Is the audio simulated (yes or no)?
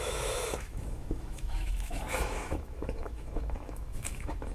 yes